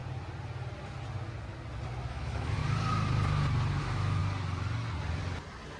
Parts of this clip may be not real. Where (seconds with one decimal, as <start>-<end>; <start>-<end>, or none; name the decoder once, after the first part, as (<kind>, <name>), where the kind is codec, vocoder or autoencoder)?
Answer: 2.1-2.6 (autoencoder, DAC-VAE); 3.8-4.2